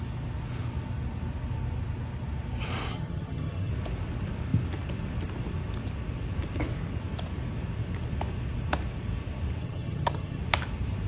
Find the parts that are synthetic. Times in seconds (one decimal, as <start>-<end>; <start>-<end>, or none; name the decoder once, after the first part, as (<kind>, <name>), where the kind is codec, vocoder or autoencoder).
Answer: 2.9-3.7 (vocoder, HiFi-GAN); 9.6-10.4